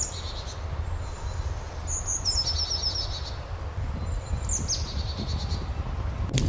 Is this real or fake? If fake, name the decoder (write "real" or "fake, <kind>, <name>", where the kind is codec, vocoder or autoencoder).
real